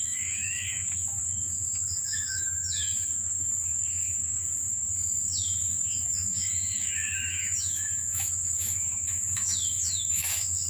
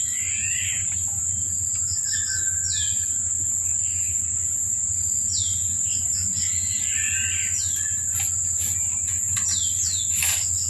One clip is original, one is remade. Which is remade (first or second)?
first